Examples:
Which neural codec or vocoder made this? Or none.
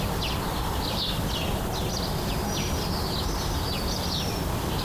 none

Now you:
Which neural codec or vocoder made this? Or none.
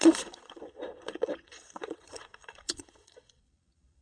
vocoder, Vocos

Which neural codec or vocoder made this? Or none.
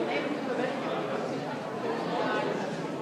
none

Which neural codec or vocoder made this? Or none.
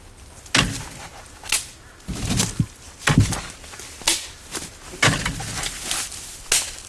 none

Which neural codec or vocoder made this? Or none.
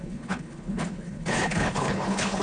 codec, HILCodec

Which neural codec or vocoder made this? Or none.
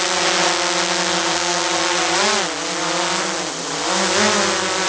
none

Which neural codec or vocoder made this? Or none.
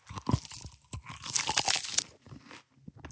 none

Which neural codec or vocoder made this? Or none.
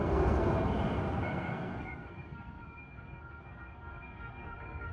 codec, SNAC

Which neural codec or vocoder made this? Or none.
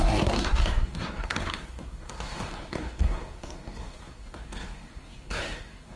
codec, SNAC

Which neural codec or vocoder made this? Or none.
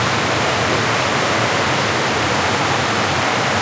none